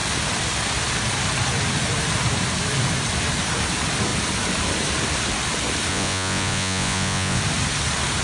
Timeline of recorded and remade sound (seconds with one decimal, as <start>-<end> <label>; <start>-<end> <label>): 0.0-5.9 recorded; 5.9-7.4 remade; 7.4-8.2 recorded